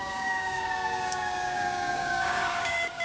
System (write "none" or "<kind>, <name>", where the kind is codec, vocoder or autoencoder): codec, DAC